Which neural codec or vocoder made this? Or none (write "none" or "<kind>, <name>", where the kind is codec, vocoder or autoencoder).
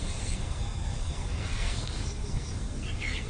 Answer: codec, SNAC